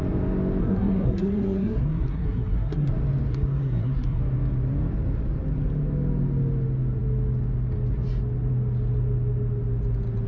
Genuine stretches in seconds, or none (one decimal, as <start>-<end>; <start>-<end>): 0.0-0.6; 2.9-3.3; 4.2-10.3